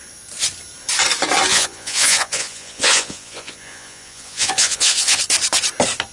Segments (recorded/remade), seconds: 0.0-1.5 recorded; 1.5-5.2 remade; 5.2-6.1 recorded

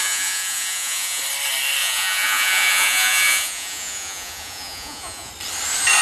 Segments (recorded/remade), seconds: 0.0-1.2 remade; 1.2-1.8 recorded; 1.8-5.3 remade; 5.3-6.0 recorded

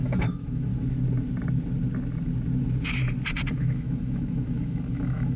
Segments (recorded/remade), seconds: 0.0-0.7 remade; 0.7-3.5 recorded; 3.5-5.4 remade